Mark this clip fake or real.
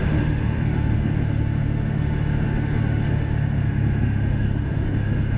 fake